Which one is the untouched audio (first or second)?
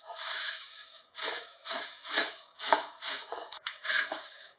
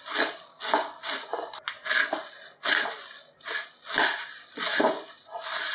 second